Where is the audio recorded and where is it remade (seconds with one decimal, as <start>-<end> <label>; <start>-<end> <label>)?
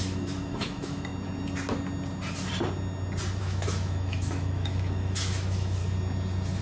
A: 0.0-1.1 remade; 1.1-3.4 recorded; 3.4-5.8 remade; 5.8-6.6 recorded